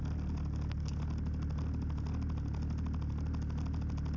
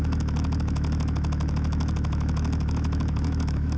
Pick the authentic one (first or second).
first